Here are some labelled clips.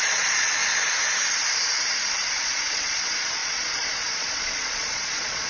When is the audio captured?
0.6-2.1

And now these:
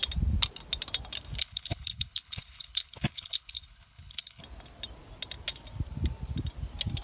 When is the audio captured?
0.0-1.4; 4.4-7.0

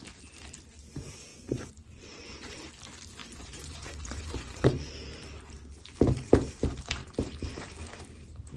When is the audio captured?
0.0-1.3; 2.7-3.2; 4.9-8.6

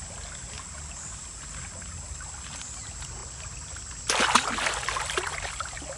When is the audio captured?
0.0-6.0

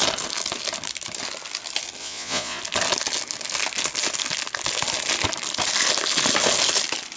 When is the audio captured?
0.0-2.0; 2.6-7.2